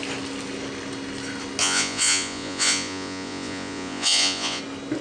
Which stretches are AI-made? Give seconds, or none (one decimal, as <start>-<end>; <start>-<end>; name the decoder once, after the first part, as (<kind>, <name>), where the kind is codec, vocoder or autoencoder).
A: 1.6-4.6 (vocoder, Vocos)